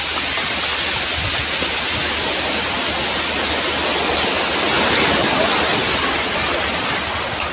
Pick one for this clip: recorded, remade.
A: recorded